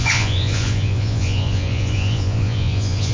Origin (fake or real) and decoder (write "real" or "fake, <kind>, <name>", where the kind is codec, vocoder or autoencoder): fake, vocoder, Vocos